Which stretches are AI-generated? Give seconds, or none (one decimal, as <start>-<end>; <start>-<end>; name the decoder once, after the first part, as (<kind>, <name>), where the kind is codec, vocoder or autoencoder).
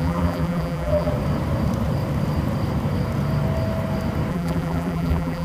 0.0-1.1 (vocoder, BigVGAN v2); 4.3-5.4